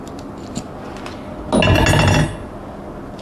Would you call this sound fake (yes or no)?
no